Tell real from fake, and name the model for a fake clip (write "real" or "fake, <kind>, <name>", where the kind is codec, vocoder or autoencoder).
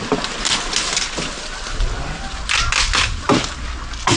real